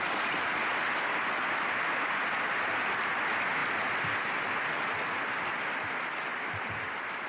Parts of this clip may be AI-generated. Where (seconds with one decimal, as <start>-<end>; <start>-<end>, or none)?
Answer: none